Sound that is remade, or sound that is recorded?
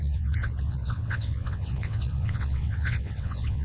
remade